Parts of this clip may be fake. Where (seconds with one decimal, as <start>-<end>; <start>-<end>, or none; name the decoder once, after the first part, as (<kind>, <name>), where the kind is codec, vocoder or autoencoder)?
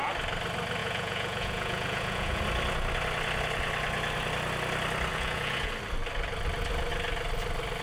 0.8-2.4 (vocoder, Vocos); 5.1-5.7